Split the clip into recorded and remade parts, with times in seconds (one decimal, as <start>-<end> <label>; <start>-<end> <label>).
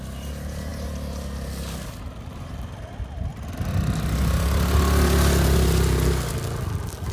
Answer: 0.0-7.1 recorded